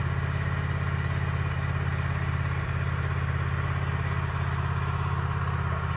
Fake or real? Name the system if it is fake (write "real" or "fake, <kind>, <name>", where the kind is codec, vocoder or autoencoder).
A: real